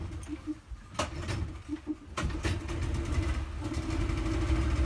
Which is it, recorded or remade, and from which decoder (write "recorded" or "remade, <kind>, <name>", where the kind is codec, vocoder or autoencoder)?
recorded